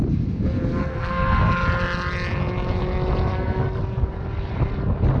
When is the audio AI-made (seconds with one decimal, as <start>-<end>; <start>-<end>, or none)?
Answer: 0.8-1.5; 3.3-3.8